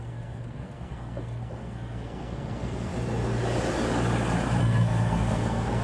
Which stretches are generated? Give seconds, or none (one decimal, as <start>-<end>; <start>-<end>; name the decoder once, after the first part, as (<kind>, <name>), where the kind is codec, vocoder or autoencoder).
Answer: 0.0-2.9 (codec, SNAC); 4.6-5.8